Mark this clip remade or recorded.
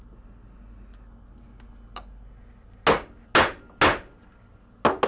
recorded